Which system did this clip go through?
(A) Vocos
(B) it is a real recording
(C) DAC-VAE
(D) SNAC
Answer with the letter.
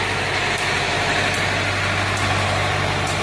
B